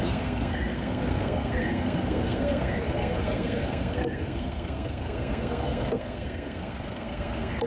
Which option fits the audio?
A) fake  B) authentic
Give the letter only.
A